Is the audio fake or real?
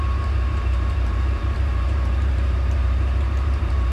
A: fake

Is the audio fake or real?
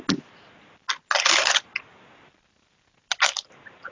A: real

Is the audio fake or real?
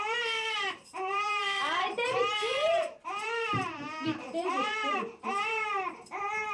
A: fake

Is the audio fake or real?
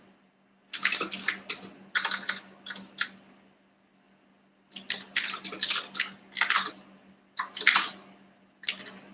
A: real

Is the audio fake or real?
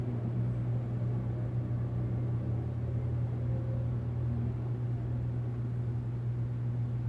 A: fake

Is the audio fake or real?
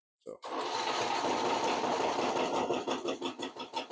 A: fake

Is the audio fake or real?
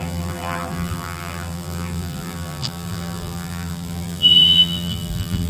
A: fake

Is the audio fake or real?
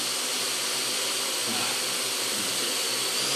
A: real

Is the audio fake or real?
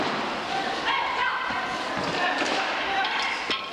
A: fake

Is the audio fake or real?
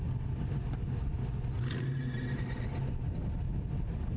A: real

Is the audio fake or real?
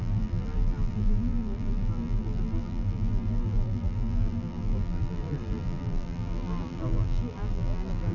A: fake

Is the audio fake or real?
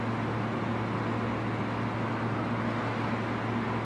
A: real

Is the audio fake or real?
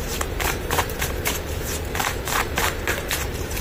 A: fake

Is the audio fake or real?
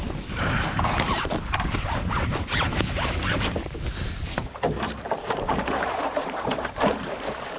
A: fake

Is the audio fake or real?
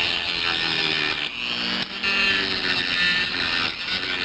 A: real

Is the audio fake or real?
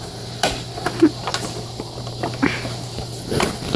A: fake